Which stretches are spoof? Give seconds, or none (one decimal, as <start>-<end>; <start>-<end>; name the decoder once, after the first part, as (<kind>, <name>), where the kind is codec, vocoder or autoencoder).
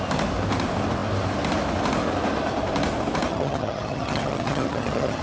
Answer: 3.3-5.2 (vocoder, HiFi-GAN)